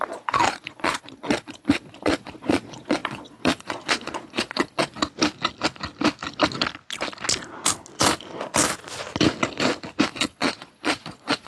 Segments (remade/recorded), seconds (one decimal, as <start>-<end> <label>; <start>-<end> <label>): 0.0-5.0 remade; 5.0-10.1 recorded; 10.1-11.5 remade

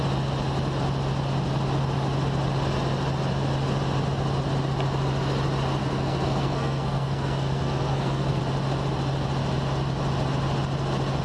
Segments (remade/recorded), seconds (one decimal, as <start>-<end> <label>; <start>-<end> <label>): 0.0-5.8 recorded; 5.8-8.4 remade; 8.4-11.2 recorded

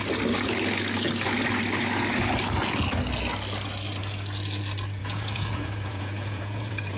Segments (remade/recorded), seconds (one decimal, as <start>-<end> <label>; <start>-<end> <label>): 0.0-5.0 recorded; 5.0-7.0 remade